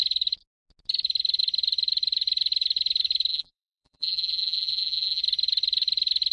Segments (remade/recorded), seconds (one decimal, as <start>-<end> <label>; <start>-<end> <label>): 0.0-3.3 recorded; 3.3-5.2 remade; 5.2-6.3 recorded

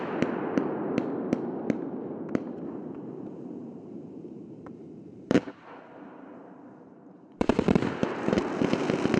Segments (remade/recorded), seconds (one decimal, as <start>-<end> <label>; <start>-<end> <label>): 0.0-3.6 recorded; 3.6-8.5 remade; 8.5-9.2 recorded

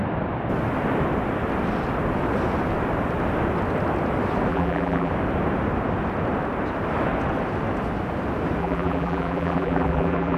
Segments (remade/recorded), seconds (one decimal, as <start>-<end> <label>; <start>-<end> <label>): 0.0-4.5 recorded; 4.5-5.1 remade; 5.1-8.6 recorded; 8.6-10.4 remade